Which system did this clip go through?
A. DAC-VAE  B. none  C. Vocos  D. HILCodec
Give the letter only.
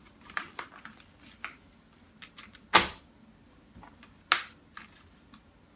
B